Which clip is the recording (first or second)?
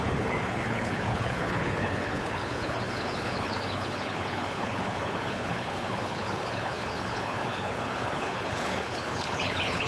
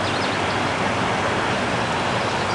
second